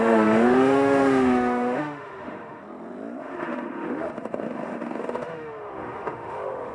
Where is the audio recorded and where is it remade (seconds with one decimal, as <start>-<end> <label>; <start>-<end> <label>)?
0.0-2.6 remade; 2.6-3.2 recorded; 3.2-6.7 remade